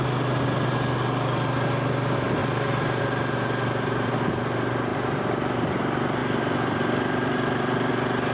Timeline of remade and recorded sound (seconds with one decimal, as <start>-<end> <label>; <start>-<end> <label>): 0.0-2.4 recorded; 2.4-3.0 remade; 3.0-4.9 recorded; 4.9-5.8 remade; 5.8-6.2 recorded; 6.2-7.9 remade; 7.9-8.3 recorded

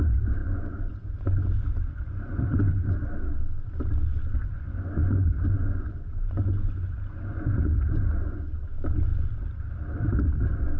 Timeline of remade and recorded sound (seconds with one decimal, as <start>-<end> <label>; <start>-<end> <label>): 0.0-0.4 recorded; 0.4-3.0 remade; 3.0-4.4 recorded; 4.4-8.4 remade; 8.4-10.8 recorded

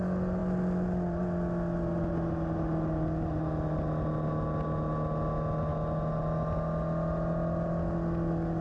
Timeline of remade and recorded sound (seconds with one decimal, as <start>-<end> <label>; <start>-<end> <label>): 0.0-8.6 recorded

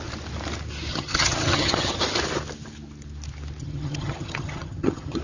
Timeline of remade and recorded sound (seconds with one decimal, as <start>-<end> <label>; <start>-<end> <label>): 0.0-0.9 recorded; 0.9-2.0 remade; 2.0-3.6 recorded; 3.6-5.2 remade

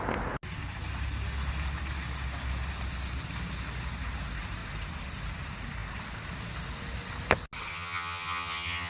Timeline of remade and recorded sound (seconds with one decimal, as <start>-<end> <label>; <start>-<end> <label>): 0.0-7.7 recorded; 7.7-8.9 remade

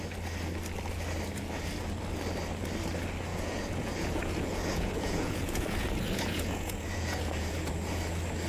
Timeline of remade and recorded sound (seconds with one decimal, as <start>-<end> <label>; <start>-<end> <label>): 0.0-3.3 recorded; 3.3-7.7 remade; 7.7-8.5 recorded